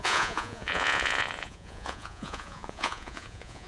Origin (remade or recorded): remade